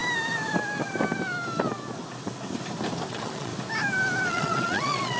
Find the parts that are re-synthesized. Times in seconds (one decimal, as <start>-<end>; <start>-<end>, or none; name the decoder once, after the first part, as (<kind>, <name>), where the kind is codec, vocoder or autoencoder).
3.1-3.5 (vocoder, Vocos); 4.3-5.2